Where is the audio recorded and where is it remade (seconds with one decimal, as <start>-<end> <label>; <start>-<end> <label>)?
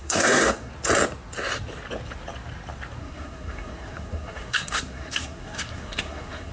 0.0-0.7 remade; 0.7-3.0 recorded; 3.0-6.5 remade